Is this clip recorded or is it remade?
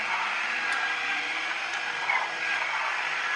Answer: recorded